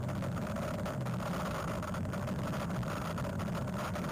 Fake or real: real